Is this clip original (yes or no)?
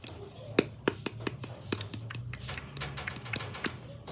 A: yes